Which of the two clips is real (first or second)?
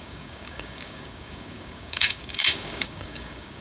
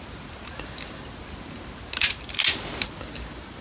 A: second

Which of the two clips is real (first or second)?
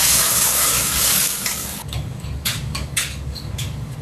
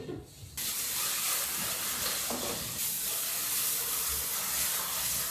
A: second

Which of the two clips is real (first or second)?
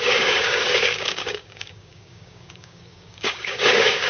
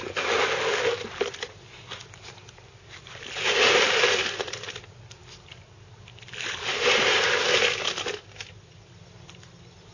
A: second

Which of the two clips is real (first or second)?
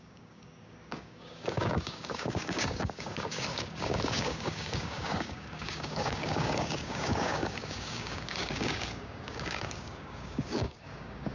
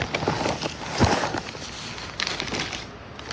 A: second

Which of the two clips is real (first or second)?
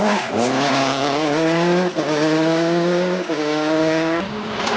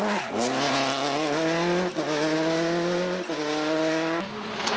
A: second